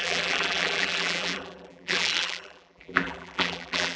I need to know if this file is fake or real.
fake